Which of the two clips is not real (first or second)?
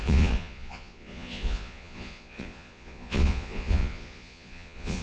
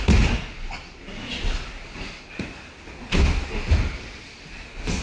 first